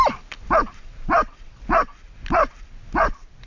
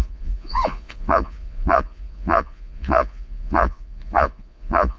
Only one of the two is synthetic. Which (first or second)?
second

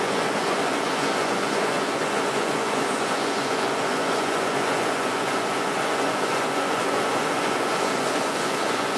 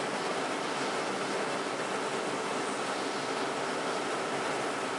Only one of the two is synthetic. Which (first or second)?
first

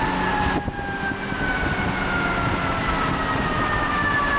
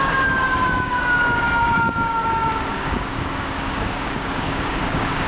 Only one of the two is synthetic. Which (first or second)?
second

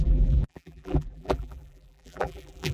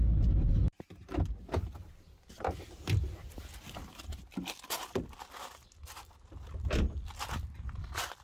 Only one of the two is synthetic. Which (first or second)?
first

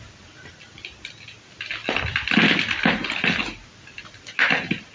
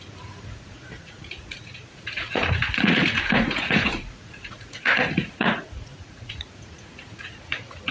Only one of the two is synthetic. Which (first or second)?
second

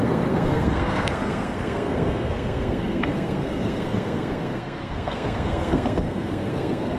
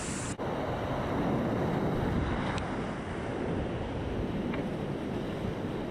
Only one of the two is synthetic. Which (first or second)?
first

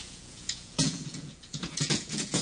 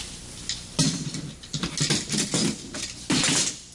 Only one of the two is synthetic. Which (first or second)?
first